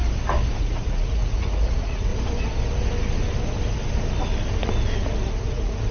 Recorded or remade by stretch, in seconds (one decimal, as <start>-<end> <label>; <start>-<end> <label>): 0.0-0.6 recorded; 0.6-2.1 remade; 2.1-5.3 recorded; 5.3-5.9 remade